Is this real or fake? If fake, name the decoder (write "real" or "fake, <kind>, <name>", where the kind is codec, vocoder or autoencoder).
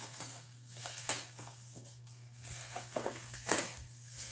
fake, codec, SNAC